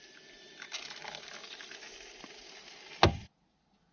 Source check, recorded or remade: recorded